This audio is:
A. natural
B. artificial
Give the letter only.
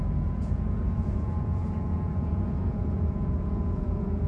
B